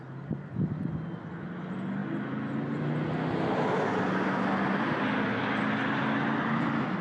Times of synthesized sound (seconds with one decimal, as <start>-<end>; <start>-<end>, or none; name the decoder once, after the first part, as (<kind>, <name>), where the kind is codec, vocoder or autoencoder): none